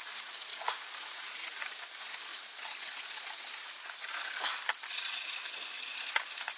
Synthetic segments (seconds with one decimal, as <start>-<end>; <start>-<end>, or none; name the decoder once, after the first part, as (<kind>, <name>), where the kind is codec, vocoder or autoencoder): none